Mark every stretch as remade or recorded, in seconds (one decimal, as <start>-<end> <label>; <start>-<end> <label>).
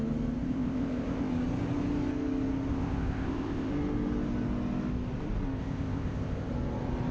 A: 0.0-0.4 recorded; 0.4-1.3 remade; 1.3-2.7 recorded; 2.7-3.7 remade; 3.7-5.6 recorded; 5.6-6.5 remade; 6.5-7.1 recorded